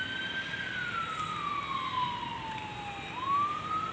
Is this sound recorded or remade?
recorded